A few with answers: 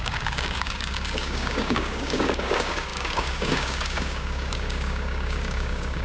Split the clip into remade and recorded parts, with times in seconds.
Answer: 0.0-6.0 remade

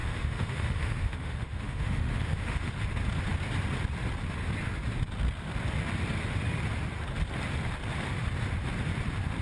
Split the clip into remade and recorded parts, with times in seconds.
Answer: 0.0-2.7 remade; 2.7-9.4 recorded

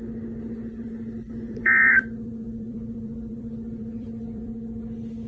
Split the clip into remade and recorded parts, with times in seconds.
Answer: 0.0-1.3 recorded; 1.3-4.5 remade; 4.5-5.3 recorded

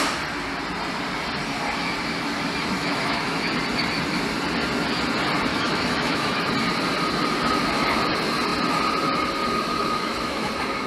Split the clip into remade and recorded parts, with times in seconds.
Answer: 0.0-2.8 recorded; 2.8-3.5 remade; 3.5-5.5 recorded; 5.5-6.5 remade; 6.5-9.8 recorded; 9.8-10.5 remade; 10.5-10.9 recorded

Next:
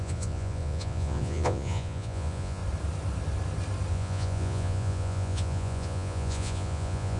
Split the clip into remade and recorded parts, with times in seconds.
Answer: 0.0-2.6 remade; 2.6-3.9 recorded; 3.9-7.2 remade